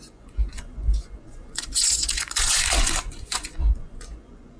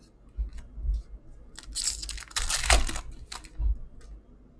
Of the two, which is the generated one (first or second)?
first